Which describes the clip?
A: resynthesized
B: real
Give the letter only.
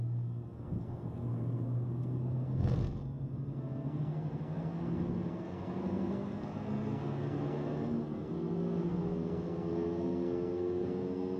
A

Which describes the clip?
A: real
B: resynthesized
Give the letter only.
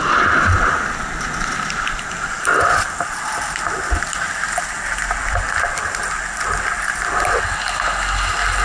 A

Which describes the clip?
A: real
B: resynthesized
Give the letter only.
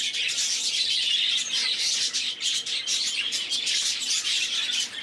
A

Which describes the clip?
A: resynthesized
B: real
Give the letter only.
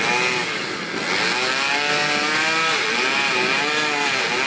B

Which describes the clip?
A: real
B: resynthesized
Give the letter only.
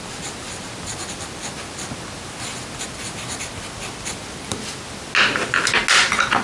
A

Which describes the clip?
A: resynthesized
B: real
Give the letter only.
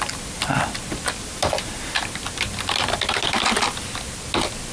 B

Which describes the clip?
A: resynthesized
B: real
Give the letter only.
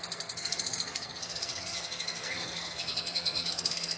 A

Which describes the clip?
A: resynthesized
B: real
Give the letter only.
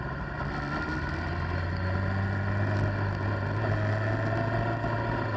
B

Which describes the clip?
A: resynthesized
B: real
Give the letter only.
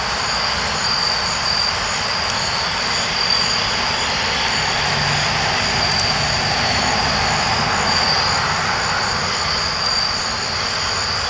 B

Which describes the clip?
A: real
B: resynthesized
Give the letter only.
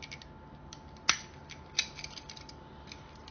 A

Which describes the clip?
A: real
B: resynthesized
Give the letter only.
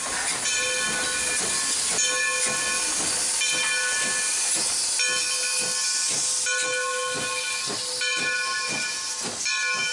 A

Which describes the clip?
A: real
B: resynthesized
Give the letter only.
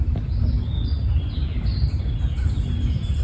A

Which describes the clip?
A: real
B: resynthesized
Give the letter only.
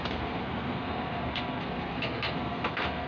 B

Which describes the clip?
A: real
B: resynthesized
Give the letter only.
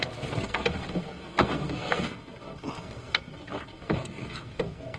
B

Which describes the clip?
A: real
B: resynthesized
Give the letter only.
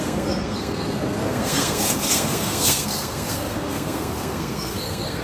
B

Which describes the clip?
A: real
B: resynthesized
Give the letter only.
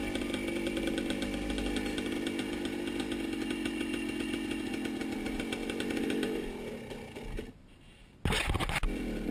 A